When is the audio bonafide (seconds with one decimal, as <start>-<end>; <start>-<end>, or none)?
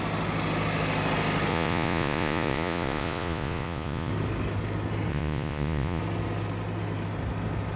0.0-1.5; 4.1-5.1; 6.0-7.8